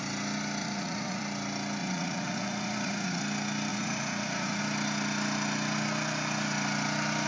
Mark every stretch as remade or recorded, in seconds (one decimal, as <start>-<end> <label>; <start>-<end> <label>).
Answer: 0.0-0.6 recorded; 0.6-1.2 remade; 1.2-1.8 recorded; 1.8-3.2 remade; 3.2-3.7 recorded; 3.7-4.6 remade; 4.6-7.3 recorded